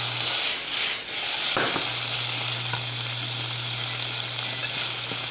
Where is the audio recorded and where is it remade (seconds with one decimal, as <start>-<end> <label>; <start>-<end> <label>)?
0.0-5.3 recorded